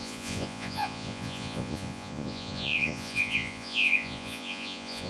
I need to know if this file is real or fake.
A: fake